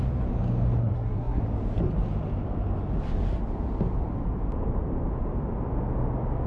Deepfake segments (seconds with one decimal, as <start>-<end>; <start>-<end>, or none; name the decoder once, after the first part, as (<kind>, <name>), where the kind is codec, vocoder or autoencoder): 0.8-1.4 (codec, SNAC)